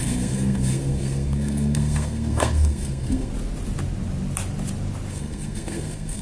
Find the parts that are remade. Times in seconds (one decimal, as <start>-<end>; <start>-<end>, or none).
0.0-3.3; 5.1-6.2